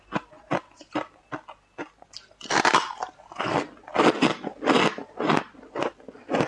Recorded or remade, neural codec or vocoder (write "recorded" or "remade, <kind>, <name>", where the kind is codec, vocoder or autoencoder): recorded